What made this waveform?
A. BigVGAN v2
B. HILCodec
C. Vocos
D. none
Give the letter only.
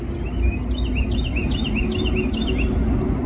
D